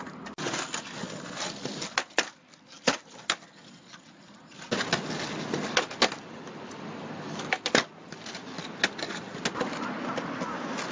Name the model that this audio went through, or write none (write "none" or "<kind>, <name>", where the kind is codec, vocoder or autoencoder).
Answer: none